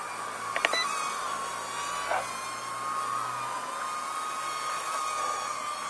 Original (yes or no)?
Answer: yes